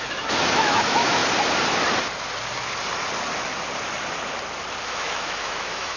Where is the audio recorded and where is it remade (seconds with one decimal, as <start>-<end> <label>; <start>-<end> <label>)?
0.0-1.2 remade; 1.2-4.8 recorded; 4.8-6.0 remade